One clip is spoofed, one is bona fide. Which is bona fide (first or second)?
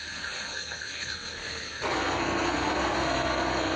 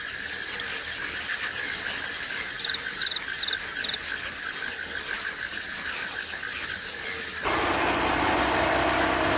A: second